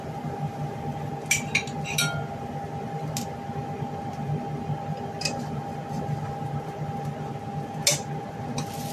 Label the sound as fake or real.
real